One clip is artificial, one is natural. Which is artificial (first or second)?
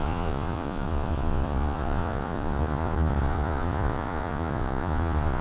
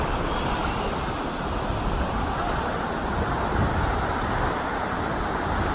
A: first